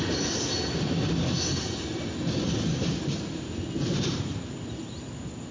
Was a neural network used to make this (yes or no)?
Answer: no